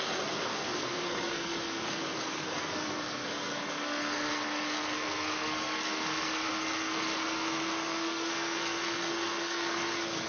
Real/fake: fake